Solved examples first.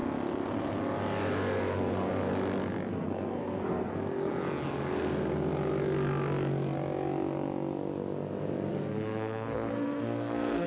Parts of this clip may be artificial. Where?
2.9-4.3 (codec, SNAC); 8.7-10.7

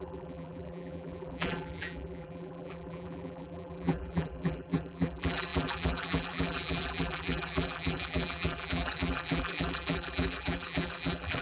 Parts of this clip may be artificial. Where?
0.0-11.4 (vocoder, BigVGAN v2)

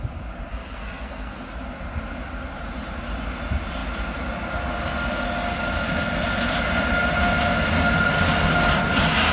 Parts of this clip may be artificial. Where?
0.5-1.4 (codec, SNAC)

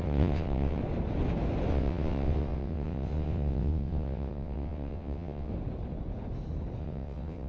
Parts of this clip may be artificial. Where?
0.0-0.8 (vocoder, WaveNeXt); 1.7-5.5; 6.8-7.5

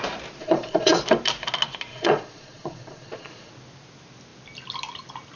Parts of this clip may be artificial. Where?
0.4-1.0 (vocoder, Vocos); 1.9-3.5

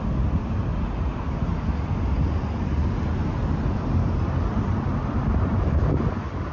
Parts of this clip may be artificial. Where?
0.0-0.7 (vocoder, BigVGAN v2); 3.5-4.9; 5.5-6.5

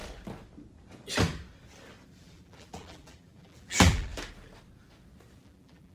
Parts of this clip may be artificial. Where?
2.2-4.1 (vocoder, BigVGAN v2); 5.4-5.9

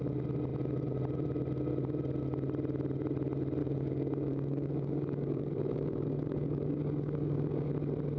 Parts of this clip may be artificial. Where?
3.6-7.7 (codec, DAC)